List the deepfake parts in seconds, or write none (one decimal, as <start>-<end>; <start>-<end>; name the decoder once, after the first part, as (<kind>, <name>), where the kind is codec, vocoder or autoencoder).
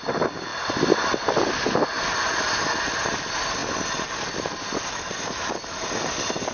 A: none